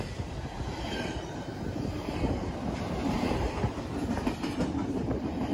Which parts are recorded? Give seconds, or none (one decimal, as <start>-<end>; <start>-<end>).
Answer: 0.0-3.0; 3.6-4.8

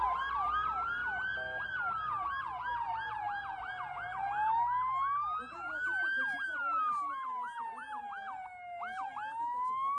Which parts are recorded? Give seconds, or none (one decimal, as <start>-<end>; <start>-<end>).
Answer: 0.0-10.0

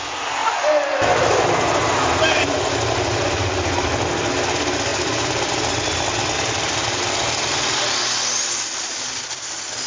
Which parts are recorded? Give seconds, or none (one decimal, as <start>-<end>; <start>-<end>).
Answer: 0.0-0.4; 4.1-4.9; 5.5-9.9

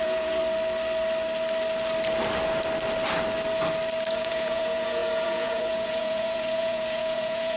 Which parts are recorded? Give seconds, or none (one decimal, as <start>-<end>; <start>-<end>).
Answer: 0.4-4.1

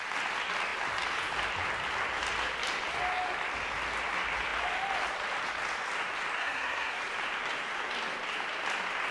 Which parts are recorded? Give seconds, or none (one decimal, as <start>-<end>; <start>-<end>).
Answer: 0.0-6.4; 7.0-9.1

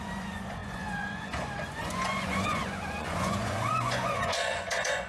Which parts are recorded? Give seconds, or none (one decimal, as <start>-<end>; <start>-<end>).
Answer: none

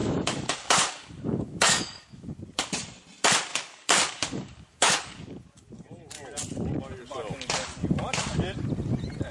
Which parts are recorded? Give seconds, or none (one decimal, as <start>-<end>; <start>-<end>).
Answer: 2.4-3.5; 5.7-9.3